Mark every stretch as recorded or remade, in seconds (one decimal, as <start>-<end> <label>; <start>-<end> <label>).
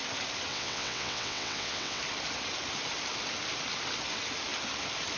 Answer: 0.0-0.5 recorded; 0.5-2.0 remade; 2.0-5.2 recorded